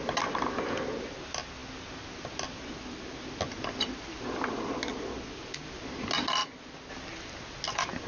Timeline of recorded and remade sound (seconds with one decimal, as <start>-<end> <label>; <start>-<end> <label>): 0.0-8.1 recorded